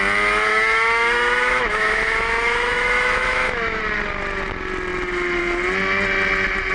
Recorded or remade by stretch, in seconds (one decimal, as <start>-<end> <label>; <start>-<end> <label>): 0.0-0.5 recorded; 0.5-3.8 remade; 3.8-6.7 recorded